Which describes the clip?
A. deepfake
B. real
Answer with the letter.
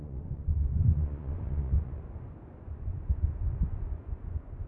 A